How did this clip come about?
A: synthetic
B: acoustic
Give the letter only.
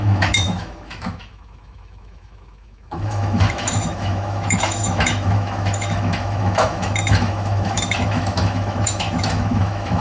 A